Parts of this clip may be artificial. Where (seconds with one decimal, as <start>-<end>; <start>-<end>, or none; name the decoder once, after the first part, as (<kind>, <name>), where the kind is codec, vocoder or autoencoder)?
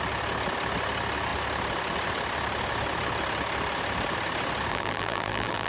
4.7-5.7 (vocoder, BigVGAN v2)